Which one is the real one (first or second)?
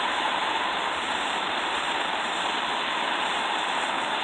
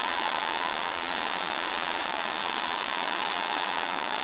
first